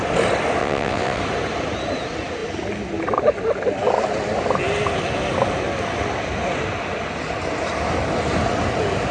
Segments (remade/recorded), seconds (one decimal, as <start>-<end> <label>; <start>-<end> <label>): 0.0-0.6 recorded; 0.6-1.2 remade; 1.2-9.1 recorded